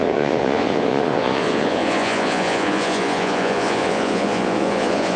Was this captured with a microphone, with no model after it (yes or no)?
no